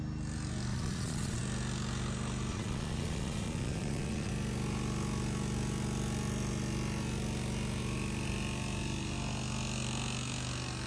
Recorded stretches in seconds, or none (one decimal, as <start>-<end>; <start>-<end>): 0.0-0.7; 1.4-2.5; 4.3-10.9